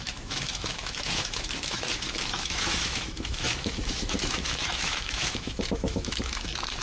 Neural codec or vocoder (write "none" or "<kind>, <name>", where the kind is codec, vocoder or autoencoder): autoencoder, DAC-VAE